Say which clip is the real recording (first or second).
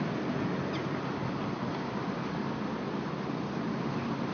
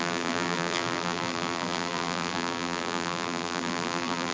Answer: first